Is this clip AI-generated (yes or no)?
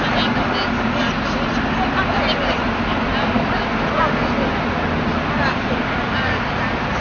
no